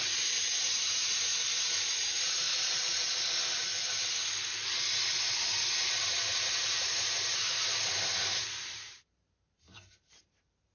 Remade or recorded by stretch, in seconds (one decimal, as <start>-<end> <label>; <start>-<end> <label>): 0.0-1.3 remade; 1.3-1.9 recorded; 1.9-2.5 remade; 2.5-5.9 recorded; 5.9-10.7 remade